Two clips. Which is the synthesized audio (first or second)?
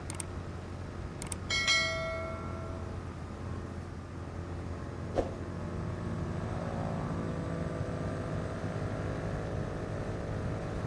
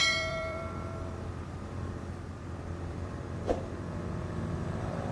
second